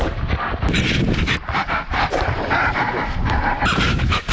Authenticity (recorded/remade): remade